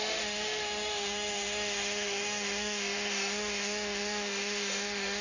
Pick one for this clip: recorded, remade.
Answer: remade